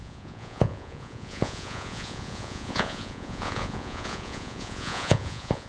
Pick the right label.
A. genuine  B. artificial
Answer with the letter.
B